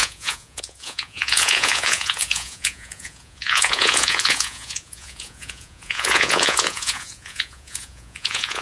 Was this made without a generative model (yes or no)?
no